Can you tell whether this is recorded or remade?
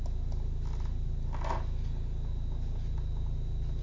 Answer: recorded